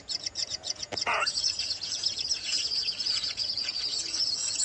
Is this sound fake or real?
fake